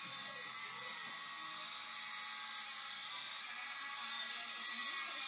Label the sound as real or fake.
real